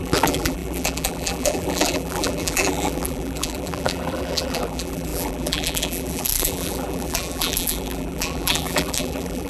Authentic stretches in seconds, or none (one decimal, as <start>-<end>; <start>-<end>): none